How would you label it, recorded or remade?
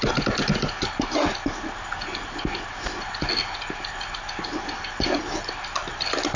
recorded